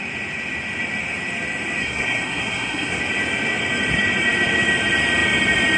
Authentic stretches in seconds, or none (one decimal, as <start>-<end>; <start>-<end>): 0.0-1.8; 3.0-5.8